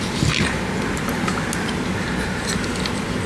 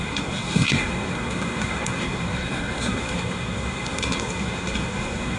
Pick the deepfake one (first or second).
second